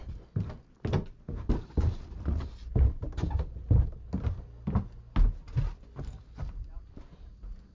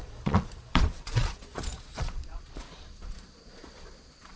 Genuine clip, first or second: first